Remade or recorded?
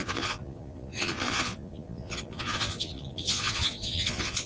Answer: remade